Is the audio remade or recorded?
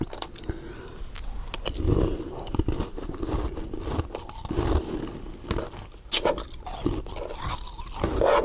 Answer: recorded